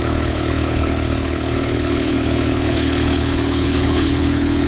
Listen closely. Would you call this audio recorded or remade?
remade